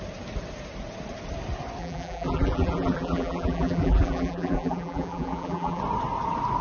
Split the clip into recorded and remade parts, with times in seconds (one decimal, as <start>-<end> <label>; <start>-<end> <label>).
0.0-1.8 recorded; 1.8-5.8 remade; 5.8-6.6 recorded